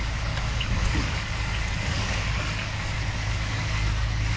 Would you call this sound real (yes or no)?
no